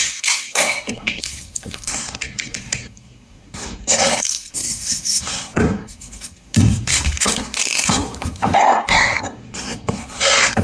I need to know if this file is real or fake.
fake